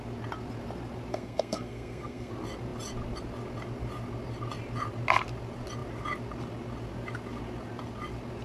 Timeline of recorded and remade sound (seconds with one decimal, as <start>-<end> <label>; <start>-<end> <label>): 0.0-1.1 recorded; 1.1-2.3 remade; 2.3-8.4 recorded